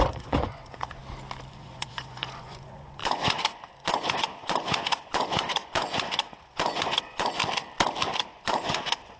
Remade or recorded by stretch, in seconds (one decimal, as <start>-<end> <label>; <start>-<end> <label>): 0.0-1.0 remade; 1.0-1.5 recorded; 1.5-7.4 remade; 7.4-8.3 recorded; 8.3-9.2 remade